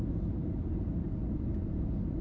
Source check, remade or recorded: recorded